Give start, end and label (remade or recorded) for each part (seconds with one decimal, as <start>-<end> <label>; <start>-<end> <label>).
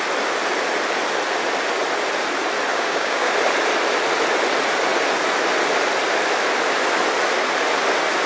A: 0.0-2.7 recorded; 2.7-3.3 remade; 3.3-8.3 recorded